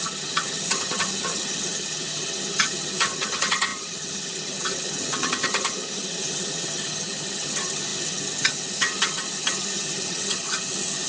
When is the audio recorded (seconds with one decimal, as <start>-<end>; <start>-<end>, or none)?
none

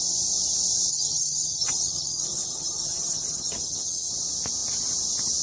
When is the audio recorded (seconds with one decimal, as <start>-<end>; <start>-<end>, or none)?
0.0-0.9; 4.1-5.4

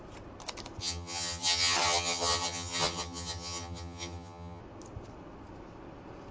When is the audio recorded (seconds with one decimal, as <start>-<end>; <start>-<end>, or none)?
0.0-0.8; 4.6-6.3

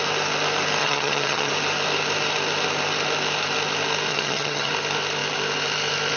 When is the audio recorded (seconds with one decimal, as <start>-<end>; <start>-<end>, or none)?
0.0-0.8; 1.5-4.1; 4.7-6.2

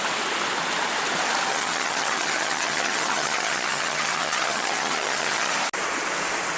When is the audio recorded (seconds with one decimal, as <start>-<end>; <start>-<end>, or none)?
0.0-1.5; 5.5-6.6

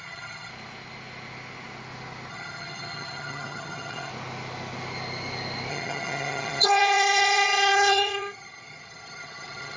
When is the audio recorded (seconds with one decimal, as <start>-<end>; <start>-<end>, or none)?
0.5-2.3; 4.1-5.7

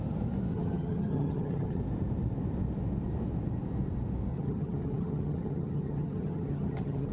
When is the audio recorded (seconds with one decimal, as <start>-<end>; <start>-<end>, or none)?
0.0-0.5; 1.8-4.3